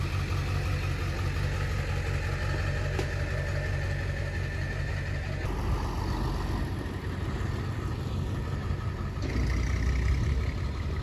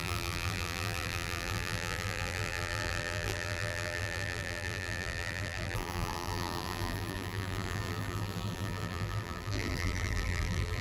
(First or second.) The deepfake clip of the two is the second